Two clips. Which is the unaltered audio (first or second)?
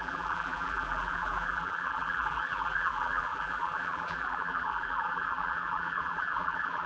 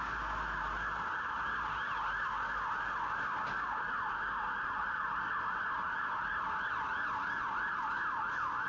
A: second